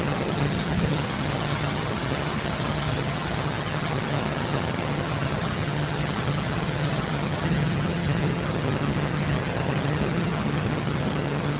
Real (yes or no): no